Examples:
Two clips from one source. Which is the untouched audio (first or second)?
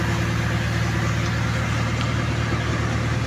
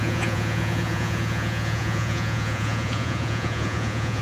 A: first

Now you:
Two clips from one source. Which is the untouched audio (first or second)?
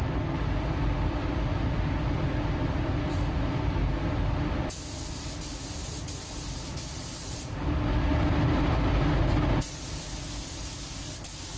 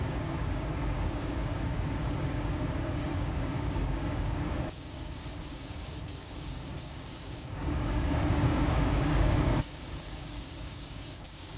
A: first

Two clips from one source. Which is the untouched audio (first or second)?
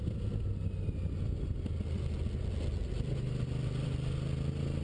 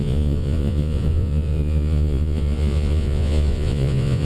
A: first